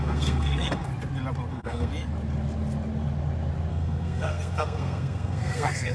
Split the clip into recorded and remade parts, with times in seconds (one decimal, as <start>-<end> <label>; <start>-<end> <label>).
0.0-0.9 remade; 0.9-1.5 recorded; 1.5-1.9 remade; 1.9-3.7 recorded; 3.7-5.9 remade